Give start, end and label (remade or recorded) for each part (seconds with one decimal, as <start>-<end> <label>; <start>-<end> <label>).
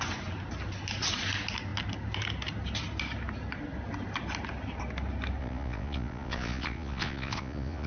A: 0.0-5.4 recorded; 5.4-7.9 remade